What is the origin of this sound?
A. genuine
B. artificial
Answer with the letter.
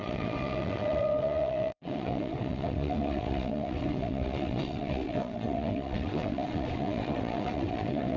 B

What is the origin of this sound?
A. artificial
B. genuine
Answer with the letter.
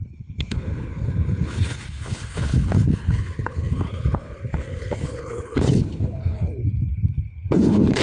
A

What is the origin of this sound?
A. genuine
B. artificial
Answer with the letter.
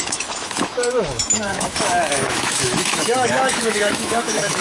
B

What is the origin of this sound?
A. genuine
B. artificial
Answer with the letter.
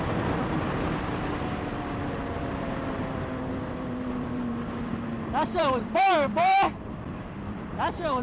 B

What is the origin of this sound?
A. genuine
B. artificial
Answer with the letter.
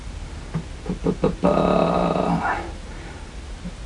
A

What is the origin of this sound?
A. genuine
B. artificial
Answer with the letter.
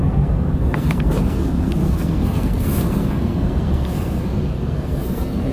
B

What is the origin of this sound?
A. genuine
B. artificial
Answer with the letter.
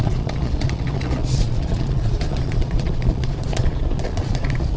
B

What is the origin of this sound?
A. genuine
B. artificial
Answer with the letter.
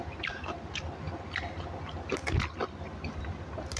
A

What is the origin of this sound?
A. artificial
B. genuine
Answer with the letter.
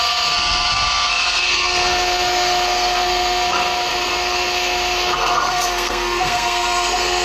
A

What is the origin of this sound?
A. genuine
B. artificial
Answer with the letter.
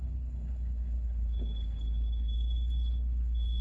B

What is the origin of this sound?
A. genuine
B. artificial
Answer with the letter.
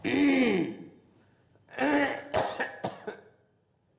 A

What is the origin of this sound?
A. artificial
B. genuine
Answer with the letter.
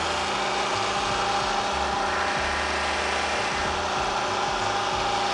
B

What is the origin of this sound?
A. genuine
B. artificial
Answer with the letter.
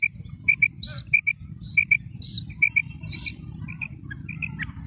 A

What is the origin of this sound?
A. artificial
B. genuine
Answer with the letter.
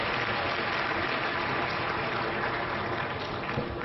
B